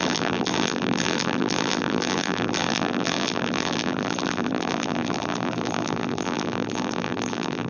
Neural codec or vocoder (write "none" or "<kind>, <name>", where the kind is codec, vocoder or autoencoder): vocoder, BigVGAN v2